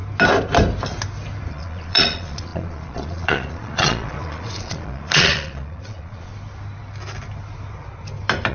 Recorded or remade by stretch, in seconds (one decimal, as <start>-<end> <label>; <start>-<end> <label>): 0.0-1.5 recorded; 1.5-6.3 remade; 6.3-8.5 recorded